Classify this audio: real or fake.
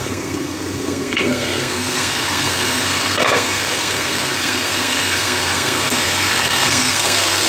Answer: fake